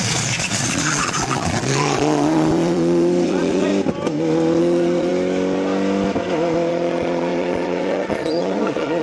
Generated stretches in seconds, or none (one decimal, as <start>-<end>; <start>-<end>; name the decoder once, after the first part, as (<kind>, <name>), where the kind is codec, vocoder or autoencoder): 0.0-3.7 (vocoder, Vocos); 4.6-5.1; 6.7-9.0